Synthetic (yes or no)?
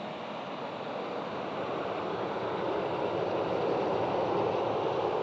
no